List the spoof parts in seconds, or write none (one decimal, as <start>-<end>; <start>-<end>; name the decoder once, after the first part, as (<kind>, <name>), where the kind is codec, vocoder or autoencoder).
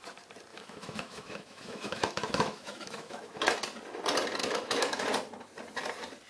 0.5-3.4 (autoencoder, DAC-VAE); 4.4-5.0